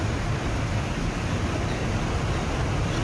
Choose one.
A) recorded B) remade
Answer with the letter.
A